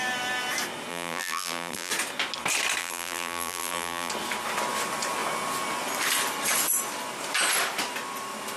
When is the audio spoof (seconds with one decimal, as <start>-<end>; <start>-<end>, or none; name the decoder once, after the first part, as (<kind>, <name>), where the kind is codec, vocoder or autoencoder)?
0.9-1.9 (vocoder, BigVGAN v2); 2.8-4.1